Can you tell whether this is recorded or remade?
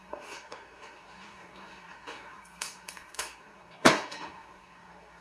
remade